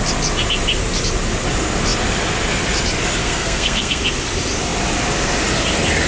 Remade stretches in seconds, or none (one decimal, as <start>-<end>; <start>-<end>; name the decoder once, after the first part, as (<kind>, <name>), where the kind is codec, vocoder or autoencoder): 3.2-4.0 (codec, SNAC)